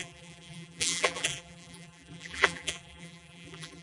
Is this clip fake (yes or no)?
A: yes